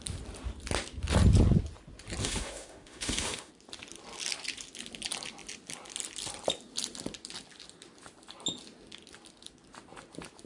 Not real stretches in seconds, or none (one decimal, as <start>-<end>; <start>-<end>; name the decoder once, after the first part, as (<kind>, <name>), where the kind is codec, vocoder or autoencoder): 2.2-3.5 (autoencoder, DAC-VAE)